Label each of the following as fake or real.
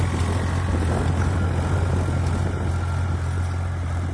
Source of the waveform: real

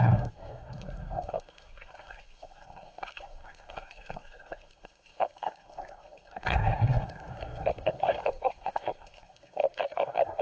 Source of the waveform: fake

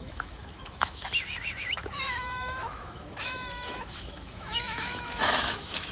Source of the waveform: fake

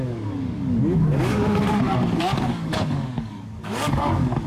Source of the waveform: fake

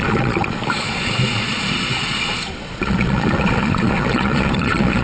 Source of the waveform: fake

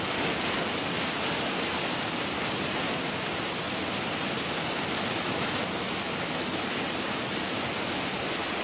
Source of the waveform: real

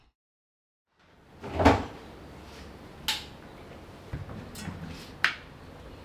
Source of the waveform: real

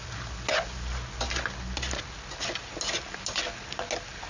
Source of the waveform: real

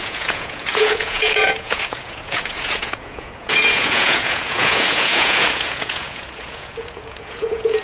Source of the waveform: fake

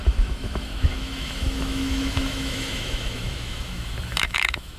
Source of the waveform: fake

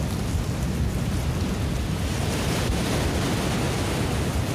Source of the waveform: real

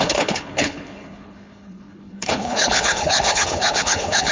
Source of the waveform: fake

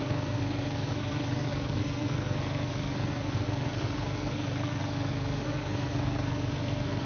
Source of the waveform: fake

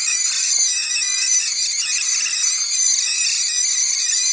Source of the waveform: real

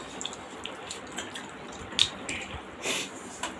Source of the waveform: real